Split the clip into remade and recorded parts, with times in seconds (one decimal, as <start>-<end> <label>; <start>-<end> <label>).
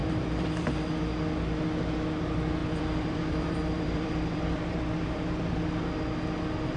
0.0-0.7 remade; 0.7-2.6 recorded; 2.6-5.6 remade; 5.6-6.8 recorded